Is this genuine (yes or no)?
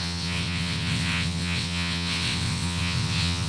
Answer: no